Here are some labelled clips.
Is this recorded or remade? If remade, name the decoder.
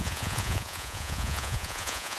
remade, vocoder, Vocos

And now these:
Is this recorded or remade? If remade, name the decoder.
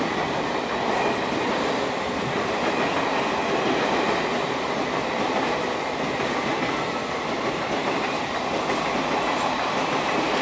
recorded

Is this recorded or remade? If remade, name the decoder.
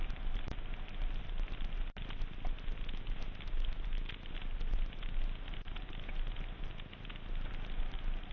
recorded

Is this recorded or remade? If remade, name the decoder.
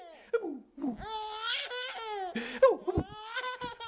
recorded